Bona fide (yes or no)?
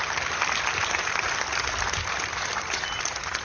yes